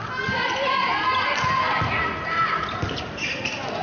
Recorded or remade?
recorded